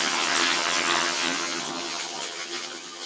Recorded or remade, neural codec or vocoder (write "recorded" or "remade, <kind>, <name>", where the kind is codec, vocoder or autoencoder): remade, vocoder, HiFi-GAN